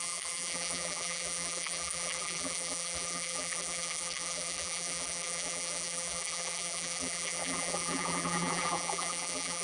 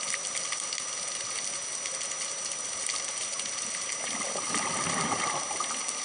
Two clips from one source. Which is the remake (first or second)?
first